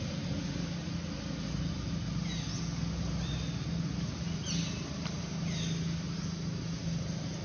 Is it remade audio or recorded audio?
recorded